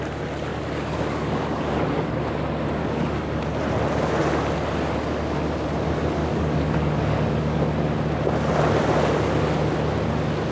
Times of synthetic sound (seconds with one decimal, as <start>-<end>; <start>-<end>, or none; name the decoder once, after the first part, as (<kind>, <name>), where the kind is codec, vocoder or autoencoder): 0.5-2.1 (codec, DAC); 2.8-3.4; 6.2-7.6